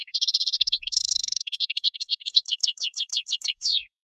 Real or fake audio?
fake